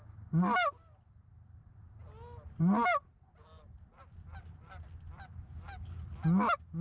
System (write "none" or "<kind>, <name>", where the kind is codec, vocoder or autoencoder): none